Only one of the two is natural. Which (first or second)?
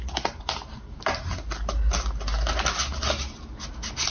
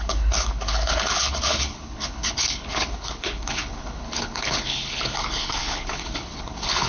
first